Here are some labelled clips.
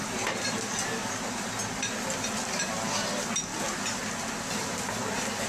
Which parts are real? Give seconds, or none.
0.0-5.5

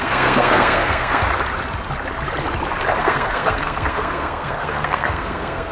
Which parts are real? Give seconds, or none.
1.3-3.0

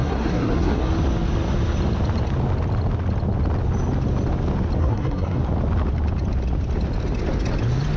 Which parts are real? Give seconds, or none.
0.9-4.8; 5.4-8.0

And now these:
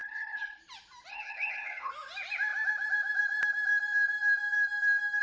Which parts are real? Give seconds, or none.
0.6-1.1; 1.9-5.2

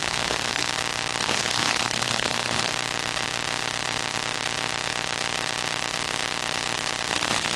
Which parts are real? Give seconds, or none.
0.7-1.2; 2.7-7.1